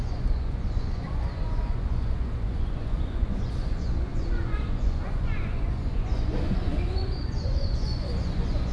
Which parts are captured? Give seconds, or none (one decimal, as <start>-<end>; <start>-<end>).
none